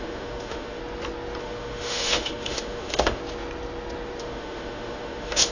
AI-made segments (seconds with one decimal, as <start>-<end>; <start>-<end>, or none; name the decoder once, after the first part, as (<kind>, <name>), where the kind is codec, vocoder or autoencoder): 0.0-0.8 (autoencoder, DAC-VAE); 1.4-3.2; 4.2-5.5